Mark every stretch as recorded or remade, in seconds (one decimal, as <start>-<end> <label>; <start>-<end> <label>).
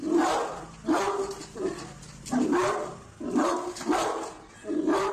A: 0.0-1.4 recorded; 1.4-2.9 remade; 2.9-5.1 recorded